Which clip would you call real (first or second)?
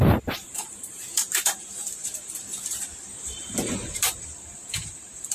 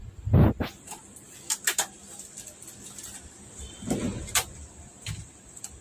second